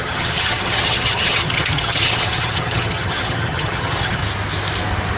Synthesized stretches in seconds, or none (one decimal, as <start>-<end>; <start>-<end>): 0.0-4.2